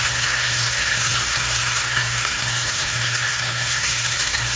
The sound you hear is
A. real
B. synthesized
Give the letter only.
B